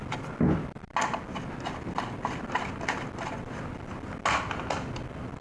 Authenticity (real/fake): real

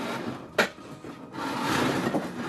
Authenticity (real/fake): real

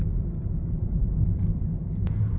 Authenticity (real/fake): fake